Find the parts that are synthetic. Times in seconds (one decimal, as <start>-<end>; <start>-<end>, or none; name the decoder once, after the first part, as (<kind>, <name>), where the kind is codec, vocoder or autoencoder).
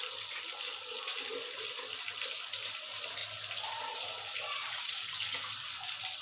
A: 4.3-5.0 (vocoder, Vocos)